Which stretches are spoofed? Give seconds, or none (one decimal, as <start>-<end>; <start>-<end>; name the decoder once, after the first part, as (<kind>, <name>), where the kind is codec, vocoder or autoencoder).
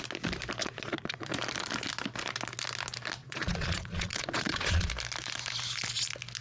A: 0.6-1.3 (vocoder, Vocos); 3.2-4.9